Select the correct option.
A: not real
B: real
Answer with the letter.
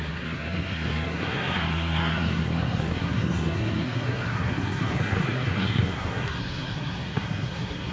A